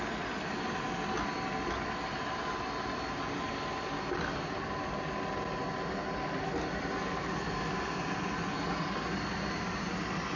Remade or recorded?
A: recorded